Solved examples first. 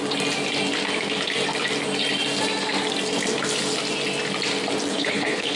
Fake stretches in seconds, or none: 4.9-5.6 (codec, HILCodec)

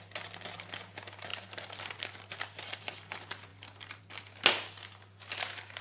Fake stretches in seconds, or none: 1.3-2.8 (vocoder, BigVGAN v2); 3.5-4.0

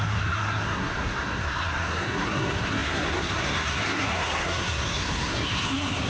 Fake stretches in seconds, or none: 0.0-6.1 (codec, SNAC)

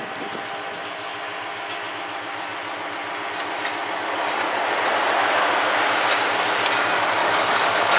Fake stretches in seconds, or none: 7.2-8.0 (codec, DAC)

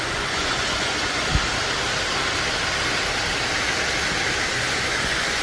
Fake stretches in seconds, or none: 0.0-1.3 (vocoder, Vocos); 4.5-5.4

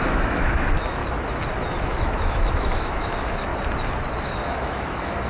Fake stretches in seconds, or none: 0.0-1.0 (autoencoder, DAC-VAE); 1.8-3.5; 4.2-5.3

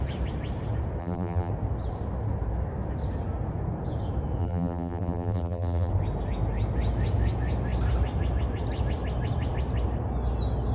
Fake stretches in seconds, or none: 1.0-1.5 (vocoder, BigVGAN v2); 4.4-5.9